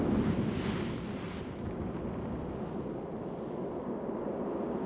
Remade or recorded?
recorded